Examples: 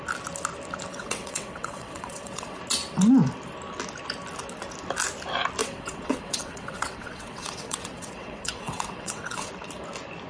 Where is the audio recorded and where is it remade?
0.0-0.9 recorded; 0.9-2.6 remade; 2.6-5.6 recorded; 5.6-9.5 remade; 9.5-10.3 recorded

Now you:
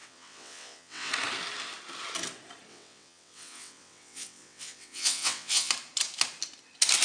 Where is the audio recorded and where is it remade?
0.0-1.1 remade; 1.1-2.7 recorded; 2.7-5.7 remade; 5.7-7.0 recorded

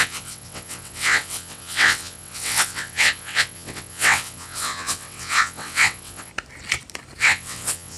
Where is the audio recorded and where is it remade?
0.0-6.3 remade; 6.3-7.2 recorded; 7.2-8.0 remade

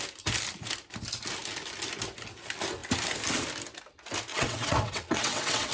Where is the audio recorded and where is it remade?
0.0-4.3 recorded; 4.3-5.7 remade

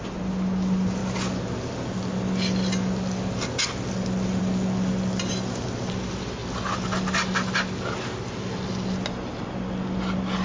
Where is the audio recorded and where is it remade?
0.0-10.4 recorded

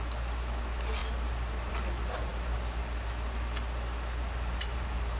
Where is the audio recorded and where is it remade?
0.0-5.2 recorded